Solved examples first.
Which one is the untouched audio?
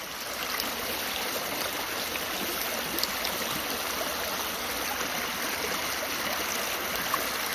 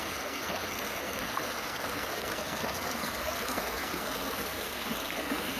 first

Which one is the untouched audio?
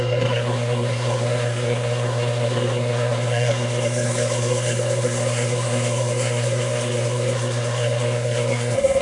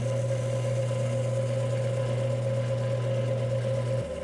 second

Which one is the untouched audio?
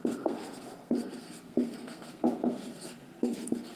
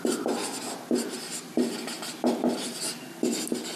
second